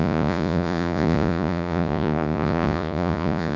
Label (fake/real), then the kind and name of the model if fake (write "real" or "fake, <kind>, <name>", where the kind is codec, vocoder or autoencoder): fake, vocoder, Vocos